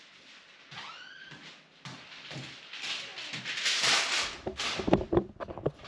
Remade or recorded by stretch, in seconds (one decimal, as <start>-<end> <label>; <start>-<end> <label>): 0.0-5.9 recorded